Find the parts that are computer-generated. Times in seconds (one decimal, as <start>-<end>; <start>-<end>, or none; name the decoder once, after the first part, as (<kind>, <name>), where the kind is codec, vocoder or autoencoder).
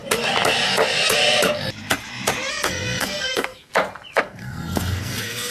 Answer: 2.5-3.7 (codec, SNAC); 4.2-5.5